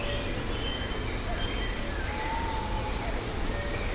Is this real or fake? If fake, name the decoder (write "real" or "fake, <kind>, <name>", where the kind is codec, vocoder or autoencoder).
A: real